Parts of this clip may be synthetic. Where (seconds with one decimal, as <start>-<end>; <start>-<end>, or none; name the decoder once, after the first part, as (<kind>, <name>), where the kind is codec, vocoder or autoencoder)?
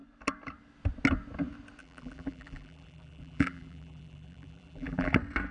1.8-5.1 (vocoder, BigVGAN v2)